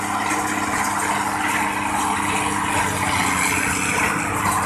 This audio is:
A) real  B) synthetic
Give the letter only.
A